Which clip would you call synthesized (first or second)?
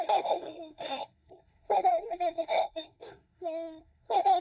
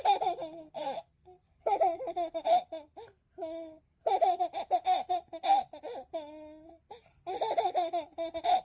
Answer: first